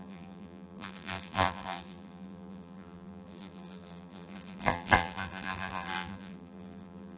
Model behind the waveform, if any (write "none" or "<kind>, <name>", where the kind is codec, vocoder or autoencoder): vocoder, BigVGAN v2